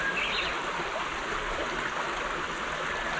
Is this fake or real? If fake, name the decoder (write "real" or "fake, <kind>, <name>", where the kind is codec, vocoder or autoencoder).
real